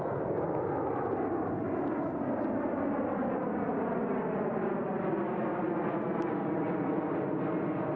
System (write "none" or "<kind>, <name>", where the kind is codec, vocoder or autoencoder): none